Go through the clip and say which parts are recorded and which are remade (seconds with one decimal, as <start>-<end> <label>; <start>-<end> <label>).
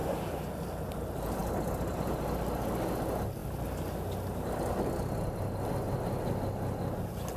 0.0-0.8 remade; 0.8-7.4 recorded